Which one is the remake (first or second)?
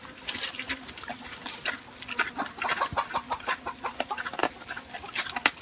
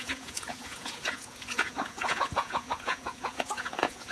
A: second